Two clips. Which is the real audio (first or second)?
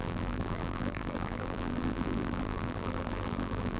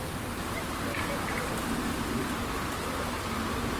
second